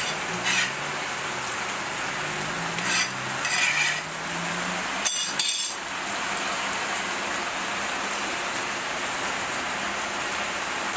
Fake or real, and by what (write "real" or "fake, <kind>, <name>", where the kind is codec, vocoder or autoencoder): real